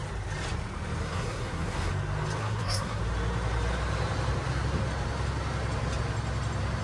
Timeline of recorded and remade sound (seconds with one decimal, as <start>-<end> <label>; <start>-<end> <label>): 0.0-1.0 recorded; 1.0-1.9 remade; 1.9-2.4 recorded; 2.4-3.0 remade; 3.0-6.8 recorded